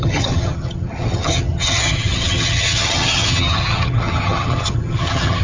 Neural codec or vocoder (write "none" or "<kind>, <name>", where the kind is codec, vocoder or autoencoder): vocoder, HiFi-GAN